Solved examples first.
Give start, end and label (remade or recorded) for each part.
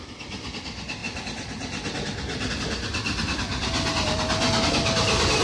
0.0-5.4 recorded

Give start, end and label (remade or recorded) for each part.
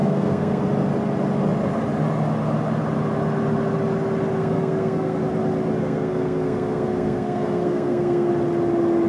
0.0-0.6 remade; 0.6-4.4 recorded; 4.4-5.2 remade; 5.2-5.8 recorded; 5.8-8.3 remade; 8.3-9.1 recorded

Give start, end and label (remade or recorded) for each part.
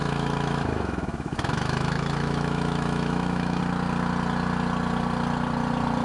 0.0-3.6 remade; 3.6-6.0 recorded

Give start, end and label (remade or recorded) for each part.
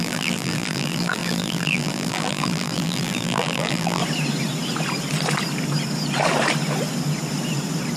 0.0-4.0 remade; 4.0-8.0 recorded